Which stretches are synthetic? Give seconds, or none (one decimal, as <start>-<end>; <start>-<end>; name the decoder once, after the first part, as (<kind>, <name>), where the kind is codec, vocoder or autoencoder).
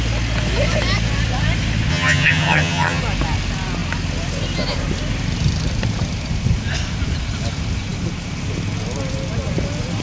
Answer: 1.9-3.0 (vocoder, HiFi-GAN)